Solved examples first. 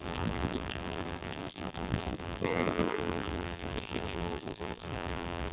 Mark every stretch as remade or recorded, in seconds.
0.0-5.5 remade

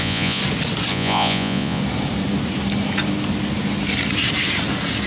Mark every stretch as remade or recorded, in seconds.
0.0-0.4 remade; 0.4-0.9 recorded; 0.9-1.8 remade; 1.8-5.1 recorded

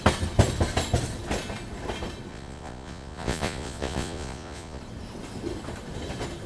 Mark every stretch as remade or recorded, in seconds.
0.0-2.3 recorded; 2.3-4.8 remade; 4.8-6.5 recorded

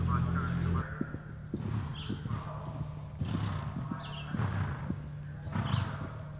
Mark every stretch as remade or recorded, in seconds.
0.0-6.4 recorded